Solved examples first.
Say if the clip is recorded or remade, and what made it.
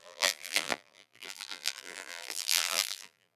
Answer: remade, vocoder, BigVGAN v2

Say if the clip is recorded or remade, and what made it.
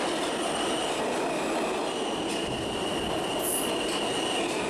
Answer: remade, vocoder, BigVGAN v2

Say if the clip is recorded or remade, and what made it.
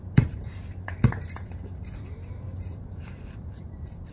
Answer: remade, vocoder, BigVGAN v2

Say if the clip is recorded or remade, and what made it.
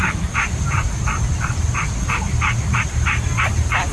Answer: remade, vocoder, BigVGAN v2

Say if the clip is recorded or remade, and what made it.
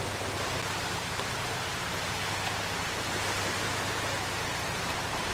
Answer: recorded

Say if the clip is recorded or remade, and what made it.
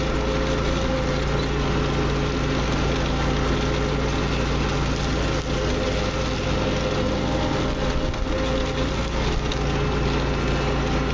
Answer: recorded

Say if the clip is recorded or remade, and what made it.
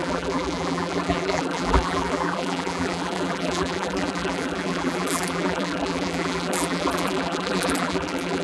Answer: remade, vocoder, BigVGAN v2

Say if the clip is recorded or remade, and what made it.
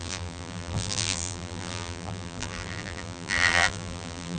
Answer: remade, vocoder, BigVGAN v2